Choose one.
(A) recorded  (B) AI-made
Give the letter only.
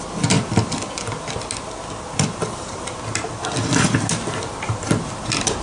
A